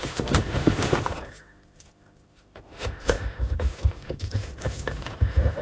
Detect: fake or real fake